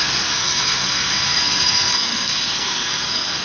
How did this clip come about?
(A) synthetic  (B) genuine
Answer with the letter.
A